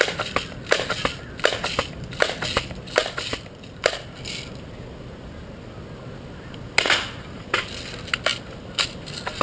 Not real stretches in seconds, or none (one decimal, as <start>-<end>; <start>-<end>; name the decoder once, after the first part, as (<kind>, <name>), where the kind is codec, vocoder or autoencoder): none